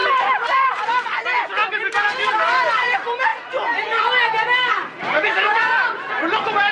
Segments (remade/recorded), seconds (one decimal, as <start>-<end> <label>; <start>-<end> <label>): 0.0-0.8 remade; 0.8-1.6 recorded; 1.6-2.3 remade; 2.3-6.7 recorded